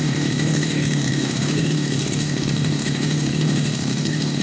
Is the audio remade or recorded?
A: remade